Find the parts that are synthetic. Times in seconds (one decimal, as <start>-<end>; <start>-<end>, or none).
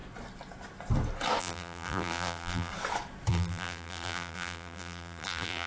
1.4-2.7; 3.3-5.7